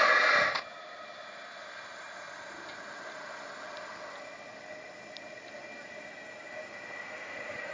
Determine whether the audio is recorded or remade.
recorded